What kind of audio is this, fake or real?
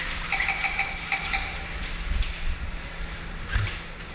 real